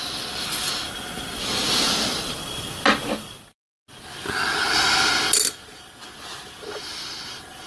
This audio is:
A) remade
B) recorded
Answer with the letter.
B